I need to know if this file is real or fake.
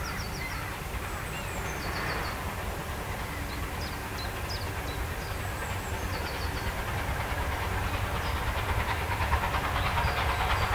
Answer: real